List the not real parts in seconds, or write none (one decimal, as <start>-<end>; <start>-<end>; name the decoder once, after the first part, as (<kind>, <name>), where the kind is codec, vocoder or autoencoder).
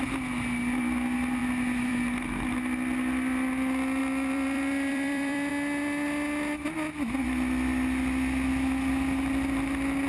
4.0-5.5 (vocoder, BigVGAN v2)